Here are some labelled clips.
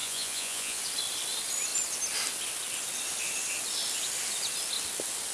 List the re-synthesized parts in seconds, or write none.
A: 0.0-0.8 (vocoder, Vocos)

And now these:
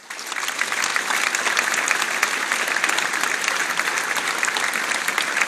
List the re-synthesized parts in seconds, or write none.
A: none

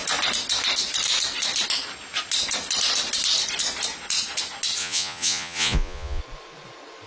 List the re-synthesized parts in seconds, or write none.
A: 4.8-6.2 (vocoder, Vocos)

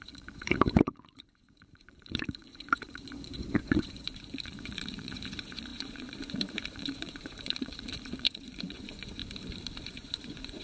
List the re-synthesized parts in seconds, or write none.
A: 0.0-9.2 (vocoder, Vocos); 9.8-10.6

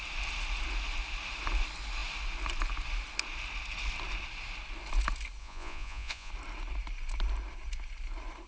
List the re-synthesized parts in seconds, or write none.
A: 5.4-6.3 (vocoder, Vocos)

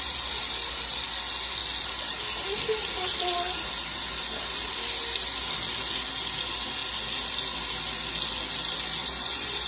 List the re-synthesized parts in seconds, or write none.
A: 9.0-9.7 (vocoder, Vocos)

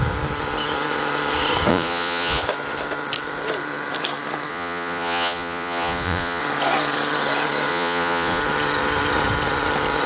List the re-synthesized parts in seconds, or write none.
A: 1.7-2.4 (vocoder, Vocos); 4.5-6.4; 7.7-8.4